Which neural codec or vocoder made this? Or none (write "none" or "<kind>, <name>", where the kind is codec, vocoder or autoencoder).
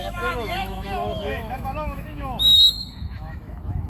autoencoder, DAC-VAE